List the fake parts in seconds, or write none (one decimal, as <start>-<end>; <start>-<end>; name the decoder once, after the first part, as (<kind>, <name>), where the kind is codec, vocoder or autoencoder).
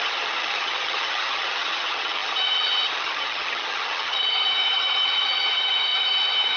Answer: 0.0-6.6 (vocoder, HiFi-GAN)